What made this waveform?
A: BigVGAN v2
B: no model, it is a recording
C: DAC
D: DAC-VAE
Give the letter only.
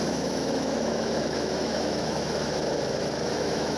D